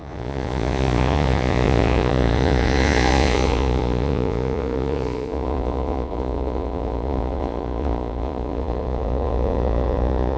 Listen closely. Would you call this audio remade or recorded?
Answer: remade